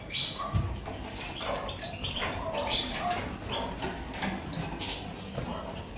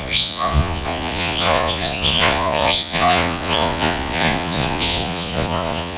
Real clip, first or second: first